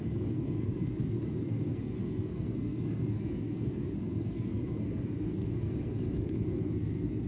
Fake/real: fake